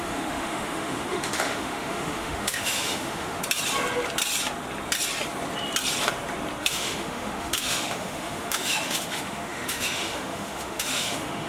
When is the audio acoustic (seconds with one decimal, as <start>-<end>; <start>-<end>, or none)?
3.4-6.6